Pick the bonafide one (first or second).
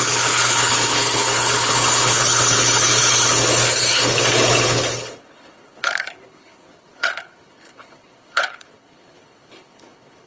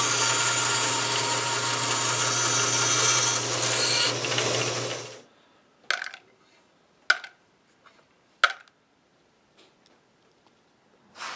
second